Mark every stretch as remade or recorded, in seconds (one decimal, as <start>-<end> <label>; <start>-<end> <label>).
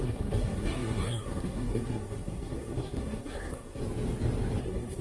0.0-3.8 remade; 3.8-4.6 recorded; 4.6-5.0 remade